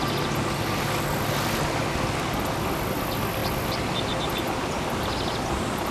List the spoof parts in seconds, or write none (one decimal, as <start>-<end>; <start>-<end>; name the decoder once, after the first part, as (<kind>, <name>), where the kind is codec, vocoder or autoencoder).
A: none